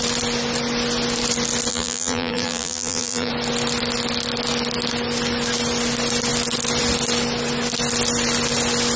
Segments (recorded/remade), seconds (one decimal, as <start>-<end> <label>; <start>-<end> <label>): 0.0-1.7 recorded; 1.7-3.3 remade; 3.3-9.0 recorded